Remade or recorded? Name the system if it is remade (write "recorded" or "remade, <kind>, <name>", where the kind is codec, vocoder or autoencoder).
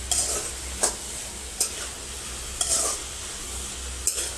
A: recorded